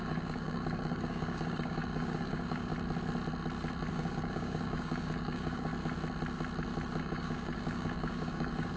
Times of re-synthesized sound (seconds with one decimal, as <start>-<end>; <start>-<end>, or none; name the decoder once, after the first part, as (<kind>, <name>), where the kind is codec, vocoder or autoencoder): 0.0-2.7 (codec, DAC); 3.9-5.7; 7.0-8.8